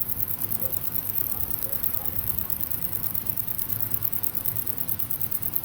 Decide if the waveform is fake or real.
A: fake